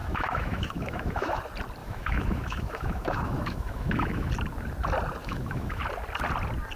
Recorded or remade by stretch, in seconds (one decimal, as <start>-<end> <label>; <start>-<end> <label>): 0.0-1.4 remade; 1.4-1.8 recorded; 1.8-4.3 remade; 4.3-5.2 recorded; 5.2-5.8 remade; 5.8-6.8 recorded